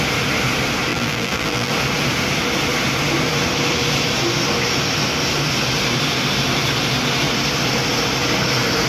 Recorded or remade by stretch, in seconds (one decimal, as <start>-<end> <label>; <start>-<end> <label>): 0.0-0.9 recorded; 0.9-1.7 remade; 1.7-8.9 recorded